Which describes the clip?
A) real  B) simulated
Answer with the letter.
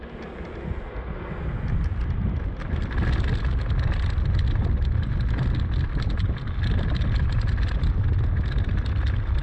A